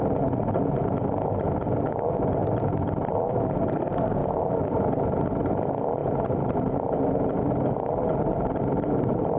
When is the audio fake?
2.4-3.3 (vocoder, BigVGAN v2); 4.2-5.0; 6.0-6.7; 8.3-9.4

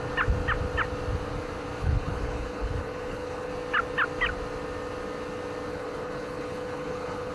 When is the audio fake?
1.8-3.5 (codec, HILCodec); 5.7-7.3

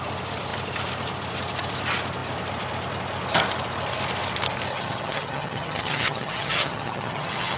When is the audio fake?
4.7-7.6 (vocoder, HiFi-GAN)